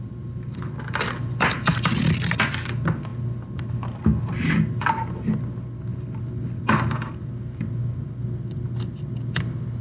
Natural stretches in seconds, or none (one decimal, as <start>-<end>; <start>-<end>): 0.0-9.8